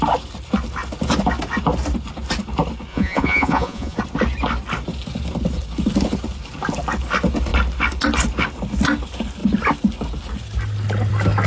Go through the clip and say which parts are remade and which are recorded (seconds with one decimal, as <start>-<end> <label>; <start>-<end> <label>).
0.0-2.9 recorded; 2.9-4.0 remade; 4.0-11.5 recorded